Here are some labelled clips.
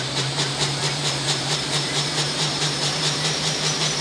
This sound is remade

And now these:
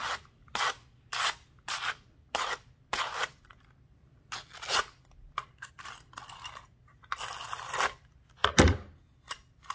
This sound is recorded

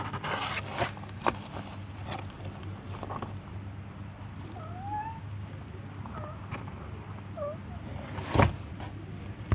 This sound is recorded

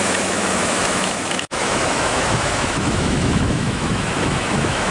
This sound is remade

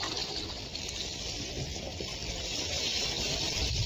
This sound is recorded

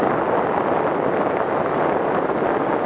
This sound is recorded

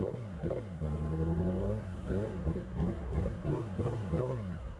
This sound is remade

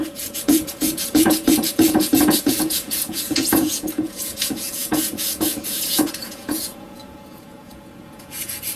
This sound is remade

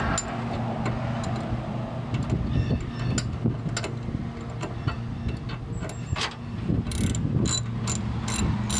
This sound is recorded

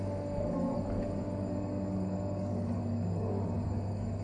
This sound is remade